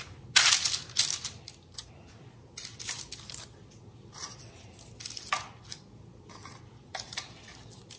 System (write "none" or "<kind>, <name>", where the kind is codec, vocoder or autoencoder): none